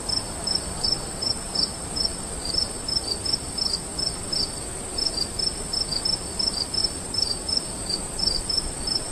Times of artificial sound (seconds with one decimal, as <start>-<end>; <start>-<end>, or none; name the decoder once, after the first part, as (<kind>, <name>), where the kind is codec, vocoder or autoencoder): 0.4-3.4 (vocoder, BigVGAN v2); 6.8-9.1